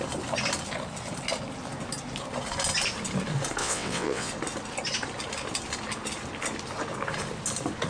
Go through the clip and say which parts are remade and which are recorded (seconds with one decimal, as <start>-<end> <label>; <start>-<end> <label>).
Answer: 0.0-3.6 recorded; 3.6-4.3 remade; 4.3-7.9 recorded